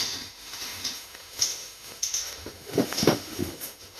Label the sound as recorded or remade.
remade